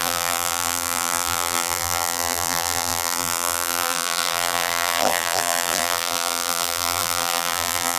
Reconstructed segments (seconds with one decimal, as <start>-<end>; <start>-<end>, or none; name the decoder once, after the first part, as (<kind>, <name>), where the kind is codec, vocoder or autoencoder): 0.0-8.0 (vocoder, BigVGAN v2)